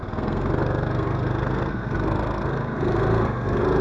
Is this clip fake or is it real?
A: fake